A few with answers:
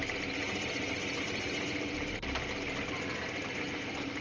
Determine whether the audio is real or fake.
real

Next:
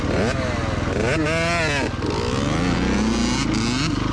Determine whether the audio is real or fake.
real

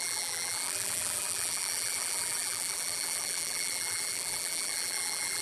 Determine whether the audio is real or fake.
fake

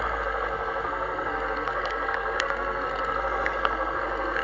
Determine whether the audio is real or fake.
fake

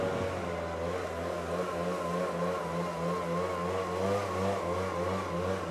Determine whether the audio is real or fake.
real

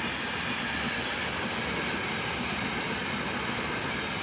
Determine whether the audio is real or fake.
real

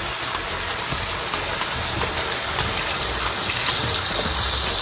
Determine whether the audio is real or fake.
fake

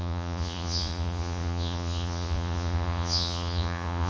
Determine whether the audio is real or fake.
fake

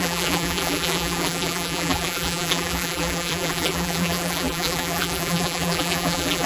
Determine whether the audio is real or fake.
fake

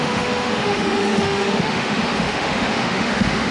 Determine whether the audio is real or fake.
fake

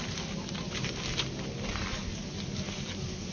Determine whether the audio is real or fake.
real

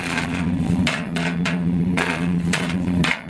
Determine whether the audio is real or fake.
fake